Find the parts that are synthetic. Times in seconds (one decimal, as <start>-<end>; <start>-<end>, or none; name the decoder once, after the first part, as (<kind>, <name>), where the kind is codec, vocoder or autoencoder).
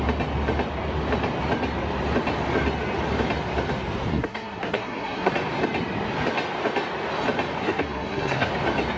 4.1-5.3 (codec, SNAC); 7.6-8.5